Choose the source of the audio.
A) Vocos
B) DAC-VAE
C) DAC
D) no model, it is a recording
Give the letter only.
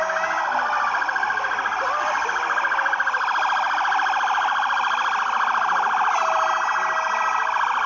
D